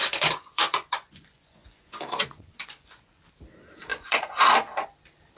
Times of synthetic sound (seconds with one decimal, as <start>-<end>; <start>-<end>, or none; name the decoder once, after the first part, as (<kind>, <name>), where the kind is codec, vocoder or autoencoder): 0.0-3.2 (vocoder, Vocos); 3.9-4.5